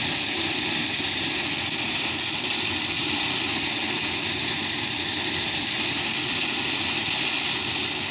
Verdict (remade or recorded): recorded